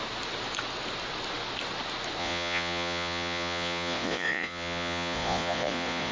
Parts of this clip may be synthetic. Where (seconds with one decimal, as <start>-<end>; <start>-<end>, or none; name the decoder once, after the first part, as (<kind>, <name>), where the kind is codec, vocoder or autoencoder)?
2.2-6.1 (vocoder, Vocos)